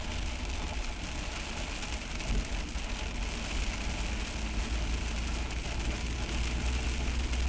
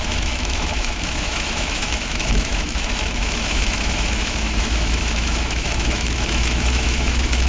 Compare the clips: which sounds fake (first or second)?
second